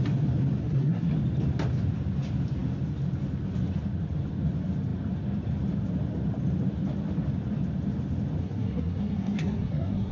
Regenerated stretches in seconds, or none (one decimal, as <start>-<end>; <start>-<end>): 0.6-1.1; 8.4-10.1